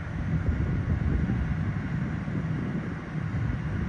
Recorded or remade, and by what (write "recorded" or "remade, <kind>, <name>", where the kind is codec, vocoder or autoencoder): recorded